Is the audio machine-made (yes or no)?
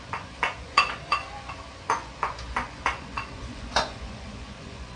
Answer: yes